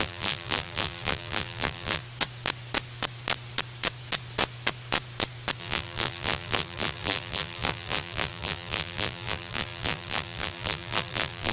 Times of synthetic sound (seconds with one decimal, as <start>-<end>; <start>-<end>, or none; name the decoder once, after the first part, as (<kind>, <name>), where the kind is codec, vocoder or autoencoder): 0.0-2.0 (vocoder, BigVGAN v2); 5.6-11.5